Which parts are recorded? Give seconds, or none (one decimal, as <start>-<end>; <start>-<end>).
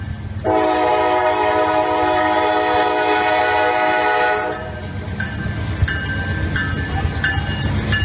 0.0-8.0